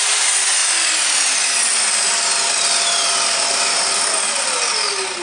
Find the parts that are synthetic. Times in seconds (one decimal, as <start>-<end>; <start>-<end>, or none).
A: none